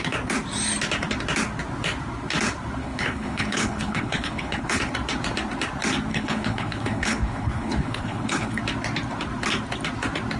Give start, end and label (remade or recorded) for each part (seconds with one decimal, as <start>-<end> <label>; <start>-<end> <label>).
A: 0.0-2.8 recorded; 2.8-4.8 remade; 4.8-6.1 recorded; 6.1-8.6 remade; 8.6-10.4 recorded